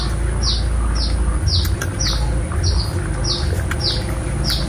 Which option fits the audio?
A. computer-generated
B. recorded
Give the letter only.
B